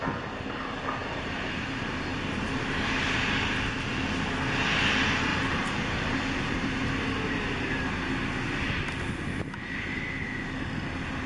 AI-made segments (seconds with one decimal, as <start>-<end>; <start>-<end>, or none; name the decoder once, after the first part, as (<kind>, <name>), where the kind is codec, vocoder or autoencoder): 1.0-2.8 (vocoder, BigVGAN v2); 5.3-7.8